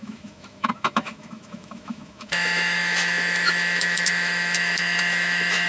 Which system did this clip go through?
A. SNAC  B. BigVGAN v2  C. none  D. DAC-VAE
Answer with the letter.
D